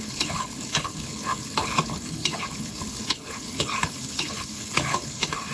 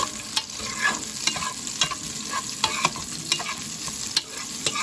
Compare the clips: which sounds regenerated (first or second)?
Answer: first